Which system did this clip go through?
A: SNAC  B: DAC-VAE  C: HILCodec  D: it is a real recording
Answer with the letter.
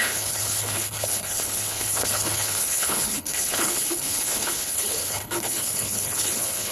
C